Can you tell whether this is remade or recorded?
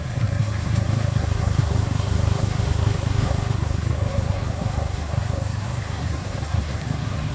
remade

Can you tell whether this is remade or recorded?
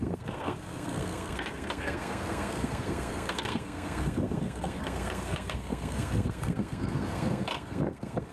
remade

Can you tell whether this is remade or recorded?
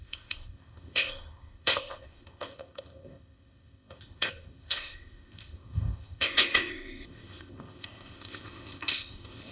remade